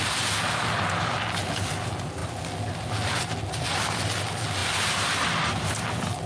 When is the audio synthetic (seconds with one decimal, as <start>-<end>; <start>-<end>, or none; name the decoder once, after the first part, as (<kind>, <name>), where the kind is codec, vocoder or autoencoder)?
4.6-5.8 (vocoder, BigVGAN v2)

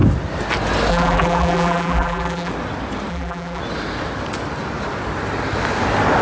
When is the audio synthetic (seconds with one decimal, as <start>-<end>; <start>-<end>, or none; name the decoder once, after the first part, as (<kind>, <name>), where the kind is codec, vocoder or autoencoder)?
0.9-2.5 (vocoder, BigVGAN v2); 3.1-3.6

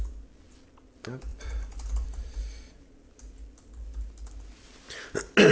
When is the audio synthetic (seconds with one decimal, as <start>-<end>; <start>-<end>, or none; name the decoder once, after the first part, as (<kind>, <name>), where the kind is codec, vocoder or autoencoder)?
1.3-3.0 (vocoder, BigVGAN v2)

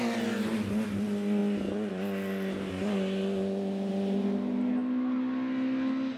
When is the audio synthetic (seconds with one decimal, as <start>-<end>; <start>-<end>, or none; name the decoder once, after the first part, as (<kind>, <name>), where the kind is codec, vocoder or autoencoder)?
none

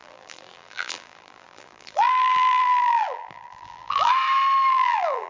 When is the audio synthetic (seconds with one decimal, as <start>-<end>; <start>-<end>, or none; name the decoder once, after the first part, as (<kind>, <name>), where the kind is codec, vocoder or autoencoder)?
0.0-4.1 (vocoder, BigVGAN v2); 4.7-5.3

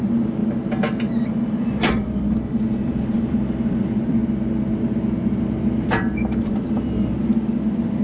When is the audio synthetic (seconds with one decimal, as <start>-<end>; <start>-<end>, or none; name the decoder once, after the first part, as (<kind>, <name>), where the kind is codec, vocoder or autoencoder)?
0.0-0.4 (vocoder, BigVGAN v2); 1.6-4.2; 5.2-8.0

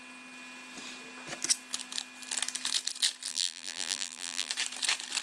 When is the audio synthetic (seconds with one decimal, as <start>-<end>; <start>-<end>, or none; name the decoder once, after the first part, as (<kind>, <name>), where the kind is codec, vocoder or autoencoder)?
3.3-4.5 (vocoder, BigVGAN v2)